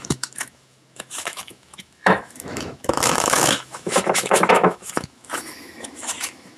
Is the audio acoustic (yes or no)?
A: no